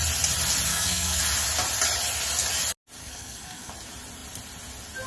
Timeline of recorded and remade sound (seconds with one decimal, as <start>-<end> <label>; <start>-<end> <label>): 0.0-0.7 recorded; 0.7-1.2 remade; 1.2-3.0 recorded; 3.0-3.7 remade; 3.7-5.1 recorded